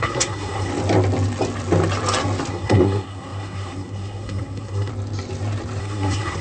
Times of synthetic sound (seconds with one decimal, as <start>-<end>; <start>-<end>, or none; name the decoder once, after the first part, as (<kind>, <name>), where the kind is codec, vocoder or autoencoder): 0.0-0.7 (codec, SNAC); 2.5-4.9; 5.8-6.4